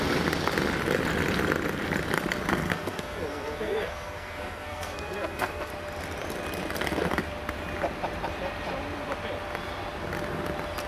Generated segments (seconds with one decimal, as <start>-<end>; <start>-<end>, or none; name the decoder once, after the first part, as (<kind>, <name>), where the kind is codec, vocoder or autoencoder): 2.7-5.7 (codec, SNAC)

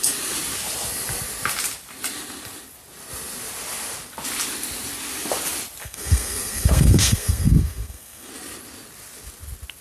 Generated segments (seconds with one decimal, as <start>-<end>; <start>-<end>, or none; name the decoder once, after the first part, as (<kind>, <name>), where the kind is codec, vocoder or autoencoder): 5.8-8.3 (codec, SNAC)